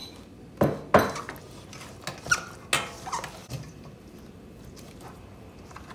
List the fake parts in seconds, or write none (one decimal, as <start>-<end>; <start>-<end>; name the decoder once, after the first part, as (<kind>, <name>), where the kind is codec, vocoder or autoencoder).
3.4-5.9 (vocoder, BigVGAN v2)